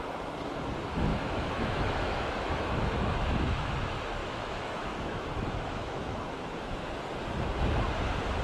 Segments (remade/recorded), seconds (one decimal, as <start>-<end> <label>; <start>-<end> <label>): 0.0-1.1 recorded; 1.1-3.7 remade; 3.7-4.2 recorded; 4.2-6.9 remade; 6.9-8.4 recorded